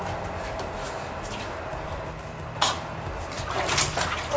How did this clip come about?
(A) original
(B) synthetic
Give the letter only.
A